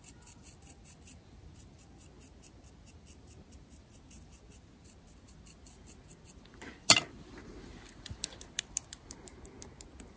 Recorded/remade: recorded